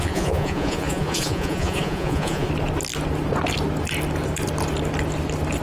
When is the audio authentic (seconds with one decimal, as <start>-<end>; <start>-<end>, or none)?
2.5-5.6